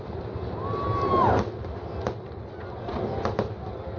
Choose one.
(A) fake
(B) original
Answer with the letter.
B